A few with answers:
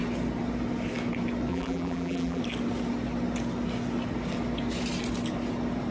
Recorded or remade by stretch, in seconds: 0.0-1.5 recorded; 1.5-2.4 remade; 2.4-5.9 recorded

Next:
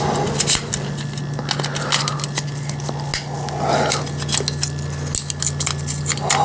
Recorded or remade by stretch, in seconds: 0.0-6.4 recorded

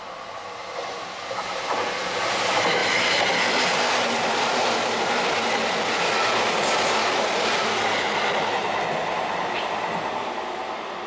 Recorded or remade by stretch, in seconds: 0.0-11.1 recorded